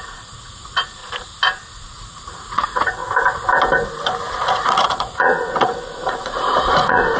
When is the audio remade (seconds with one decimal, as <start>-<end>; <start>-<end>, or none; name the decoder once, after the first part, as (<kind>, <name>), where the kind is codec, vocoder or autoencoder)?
0.0-1.0 (vocoder, Vocos); 1.7-3.0; 4.3-7.2

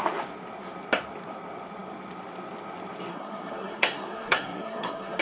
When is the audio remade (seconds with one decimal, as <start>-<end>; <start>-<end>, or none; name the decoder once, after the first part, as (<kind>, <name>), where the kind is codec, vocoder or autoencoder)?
3.1-5.2 (codec, SNAC)

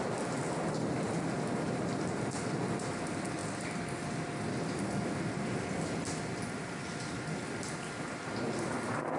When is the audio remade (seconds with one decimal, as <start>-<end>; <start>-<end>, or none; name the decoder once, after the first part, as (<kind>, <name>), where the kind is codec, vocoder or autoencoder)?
none

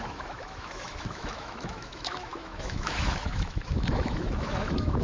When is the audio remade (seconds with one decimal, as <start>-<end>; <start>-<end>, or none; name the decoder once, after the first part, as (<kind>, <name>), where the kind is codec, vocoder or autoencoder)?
0.0-5.0 (autoencoder, DAC-VAE)

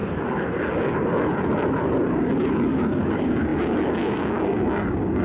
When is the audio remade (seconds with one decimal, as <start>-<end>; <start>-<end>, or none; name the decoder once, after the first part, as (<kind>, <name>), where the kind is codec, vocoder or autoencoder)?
3.1-5.2 (codec, DAC)

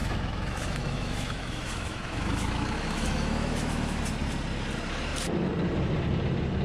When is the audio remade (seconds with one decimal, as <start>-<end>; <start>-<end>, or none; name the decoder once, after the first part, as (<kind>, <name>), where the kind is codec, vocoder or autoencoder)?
0.0-4.0 (autoencoder, DAC-VAE)

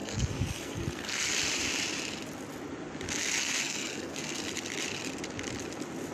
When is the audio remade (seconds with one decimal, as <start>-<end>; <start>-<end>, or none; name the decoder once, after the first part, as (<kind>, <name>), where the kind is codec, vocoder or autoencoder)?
0.0-1.3 (codec, SNAC); 3.4-4.4